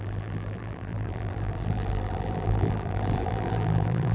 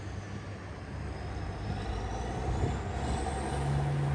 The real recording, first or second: second